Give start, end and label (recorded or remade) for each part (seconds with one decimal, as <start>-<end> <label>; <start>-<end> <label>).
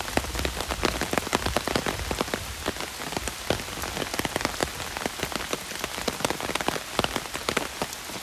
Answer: 0.0-8.2 recorded